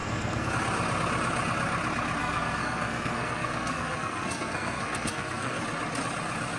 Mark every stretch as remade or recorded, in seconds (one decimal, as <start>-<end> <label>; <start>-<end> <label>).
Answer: 0.0-0.5 remade; 0.5-2.2 recorded; 2.2-5.6 remade; 5.6-6.6 recorded